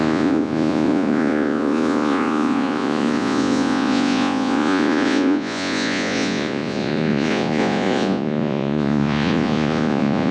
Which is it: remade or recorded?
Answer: remade